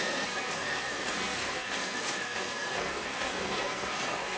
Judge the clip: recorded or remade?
remade